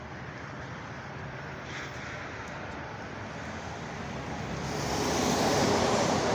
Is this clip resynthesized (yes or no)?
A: yes